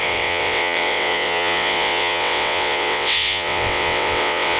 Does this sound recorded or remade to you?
remade